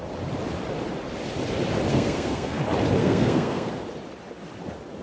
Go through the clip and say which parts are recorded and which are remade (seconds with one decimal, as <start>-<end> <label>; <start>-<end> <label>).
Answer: 0.0-1.9 recorded; 1.9-2.6 remade; 2.6-3.0 recorded; 3.0-3.7 remade; 3.7-5.0 recorded